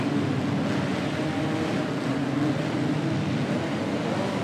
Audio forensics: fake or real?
real